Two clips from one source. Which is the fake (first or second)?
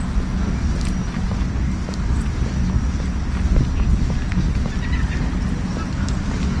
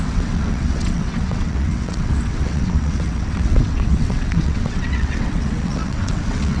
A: second